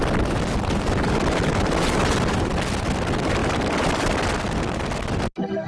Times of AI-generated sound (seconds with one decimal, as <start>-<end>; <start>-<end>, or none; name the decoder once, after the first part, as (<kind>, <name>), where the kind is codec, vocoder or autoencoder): none